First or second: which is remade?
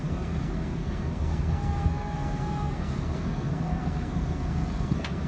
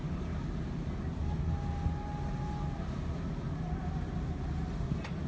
first